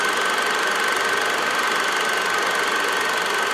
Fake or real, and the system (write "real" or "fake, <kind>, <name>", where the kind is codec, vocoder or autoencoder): real